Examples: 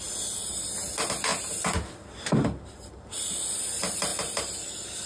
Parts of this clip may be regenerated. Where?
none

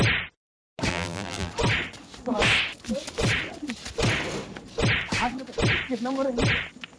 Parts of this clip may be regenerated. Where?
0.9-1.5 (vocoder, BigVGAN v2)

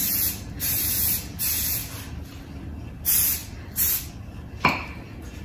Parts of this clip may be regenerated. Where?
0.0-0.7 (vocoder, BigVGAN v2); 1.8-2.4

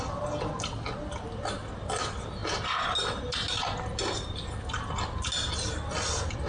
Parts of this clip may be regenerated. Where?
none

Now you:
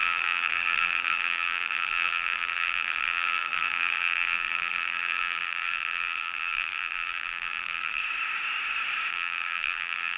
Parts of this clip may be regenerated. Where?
0.0-8.0 (vocoder, BigVGAN v2); 9.1-10.2

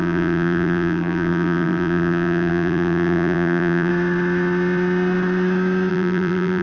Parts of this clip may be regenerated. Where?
0.0-3.9 (vocoder, BigVGAN v2); 5.9-6.6